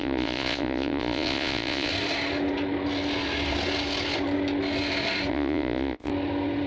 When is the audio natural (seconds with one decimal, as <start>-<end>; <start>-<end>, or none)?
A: 1.9-5.3; 6.1-6.7